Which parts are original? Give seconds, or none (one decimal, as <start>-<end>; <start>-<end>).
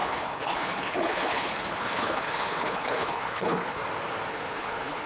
3.8-4.3